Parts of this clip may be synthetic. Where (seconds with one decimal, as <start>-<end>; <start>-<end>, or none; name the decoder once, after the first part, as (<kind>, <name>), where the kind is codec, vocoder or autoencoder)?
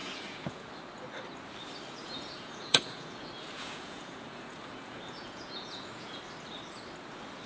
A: 0.0-0.7 (vocoder, Vocos); 2.0-6.2